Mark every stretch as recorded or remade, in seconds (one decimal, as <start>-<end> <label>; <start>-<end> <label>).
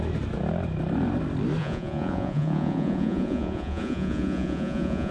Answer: 0.0-1.6 recorded; 1.6-5.1 remade